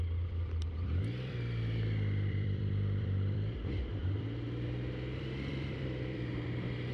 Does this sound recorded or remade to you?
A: remade